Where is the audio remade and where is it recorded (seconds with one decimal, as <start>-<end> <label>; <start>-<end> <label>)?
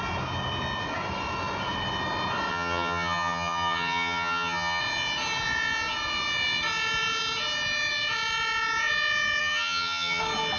0.0-2.5 recorded; 2.5-4.8 remade; 4.8-9.4 recorded; 9.4-10.2 remade; 10.2-10.6 recorded